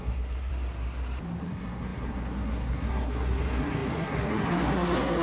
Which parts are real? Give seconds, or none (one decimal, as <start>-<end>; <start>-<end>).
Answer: 0.5-1.4